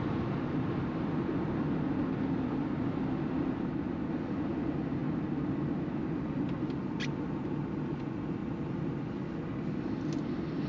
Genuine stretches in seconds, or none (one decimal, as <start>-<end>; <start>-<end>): 0.0-8.4; 9.9-10.7